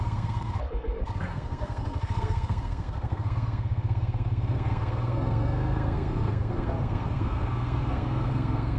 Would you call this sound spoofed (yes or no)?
yes